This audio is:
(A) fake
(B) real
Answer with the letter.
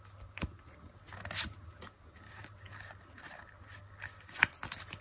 B